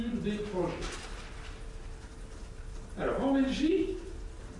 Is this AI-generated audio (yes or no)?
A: no